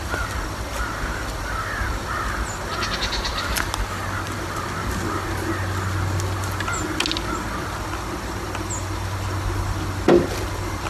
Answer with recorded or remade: recorded